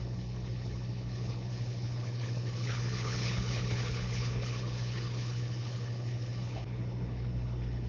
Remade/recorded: remade